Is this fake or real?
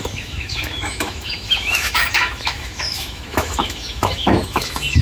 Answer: fake